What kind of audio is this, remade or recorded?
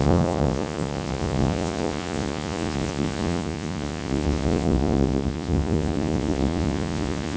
remade